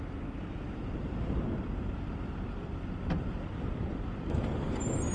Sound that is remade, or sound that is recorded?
remade